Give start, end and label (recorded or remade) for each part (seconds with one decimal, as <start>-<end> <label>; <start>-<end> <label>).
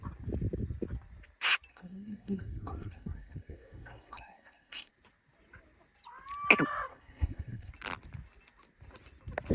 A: 0.0-1.7 recorded; 1.7-4.9 remade; 4.9-6.9 recorded; 6.9-7.7 remade; 7.7-9.5 recorded